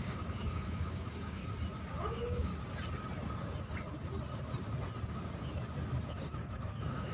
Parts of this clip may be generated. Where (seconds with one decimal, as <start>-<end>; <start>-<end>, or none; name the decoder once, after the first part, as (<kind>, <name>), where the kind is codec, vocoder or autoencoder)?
0.0-1.4 (codec, DAC); 2.0-2.5; 6.1-7.1